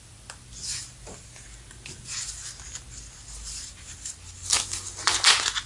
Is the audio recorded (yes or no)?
yes